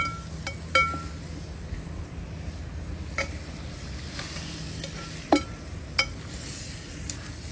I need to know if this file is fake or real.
real